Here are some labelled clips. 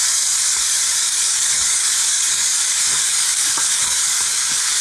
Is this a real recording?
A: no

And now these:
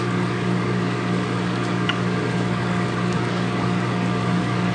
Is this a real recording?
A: no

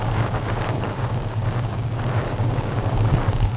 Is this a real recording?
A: no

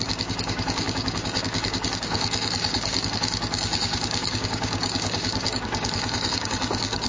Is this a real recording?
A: no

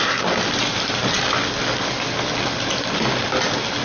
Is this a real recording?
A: yes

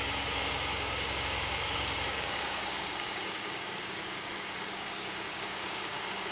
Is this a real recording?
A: no